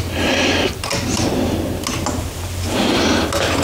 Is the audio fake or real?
real